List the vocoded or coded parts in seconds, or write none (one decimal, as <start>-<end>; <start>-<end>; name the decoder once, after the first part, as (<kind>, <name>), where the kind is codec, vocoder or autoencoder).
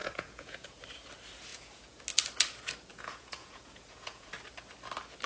0.0-0.8 (vocoder, Vocos); 1.5-2.0; 2.9-4.3